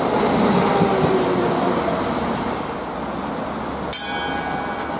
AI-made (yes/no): no